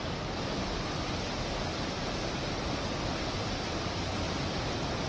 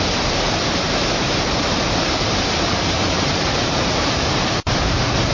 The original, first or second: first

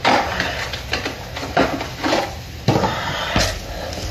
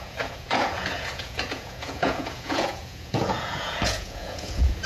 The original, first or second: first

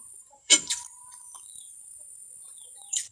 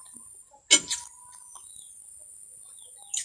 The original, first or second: second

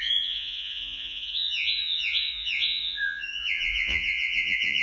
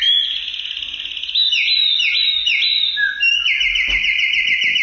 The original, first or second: second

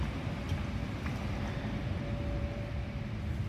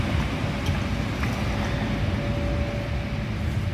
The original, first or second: second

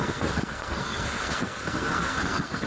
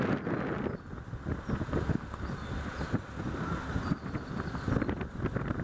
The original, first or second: second